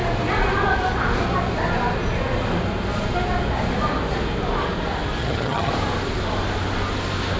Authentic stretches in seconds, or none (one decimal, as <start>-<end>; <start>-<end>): 0.0-5.2; 5.7-7.4